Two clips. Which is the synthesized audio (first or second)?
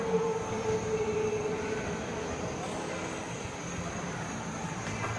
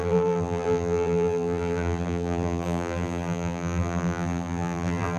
second